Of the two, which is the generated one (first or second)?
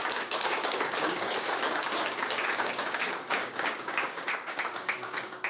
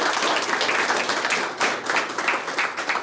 first